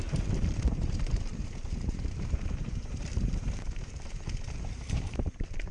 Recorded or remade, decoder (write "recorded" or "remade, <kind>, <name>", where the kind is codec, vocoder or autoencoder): remade, vocoder, BigVGAN v2